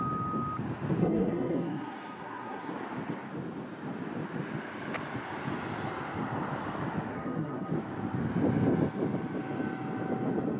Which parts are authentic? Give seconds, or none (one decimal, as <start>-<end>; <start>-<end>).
0.0-1.0; 2.7-7.1; 7.7-10.6